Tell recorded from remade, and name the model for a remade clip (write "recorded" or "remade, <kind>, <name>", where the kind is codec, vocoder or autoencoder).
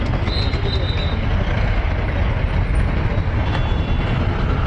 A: recorded